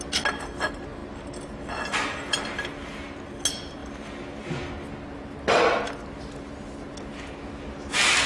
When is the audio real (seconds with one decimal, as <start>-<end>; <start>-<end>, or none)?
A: 0.0-8.3